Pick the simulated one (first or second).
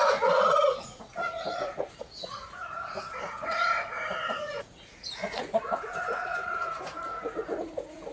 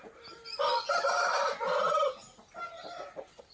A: first